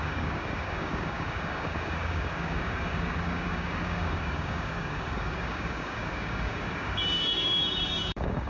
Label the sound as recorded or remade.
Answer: remade